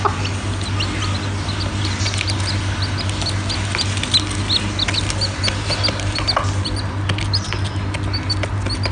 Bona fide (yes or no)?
yes